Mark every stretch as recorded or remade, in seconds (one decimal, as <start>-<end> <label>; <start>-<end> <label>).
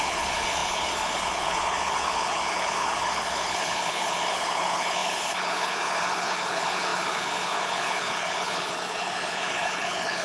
0.0-10.2 remade